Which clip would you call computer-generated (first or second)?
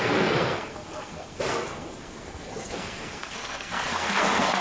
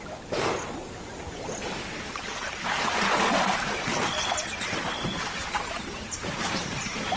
first